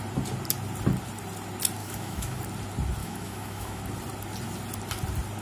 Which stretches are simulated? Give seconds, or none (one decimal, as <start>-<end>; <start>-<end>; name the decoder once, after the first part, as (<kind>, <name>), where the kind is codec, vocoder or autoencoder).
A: 1.8-2.4 (autoencoder, DAC-VAE); 3.0-3.8